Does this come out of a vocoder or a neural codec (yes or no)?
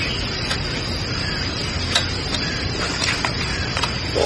no